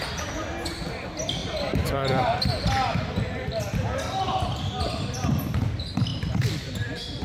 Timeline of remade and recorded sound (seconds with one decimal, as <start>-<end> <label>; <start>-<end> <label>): 0.0-1.4 recorded; 1.4-5.3 remade; 5.3-7.2 recorded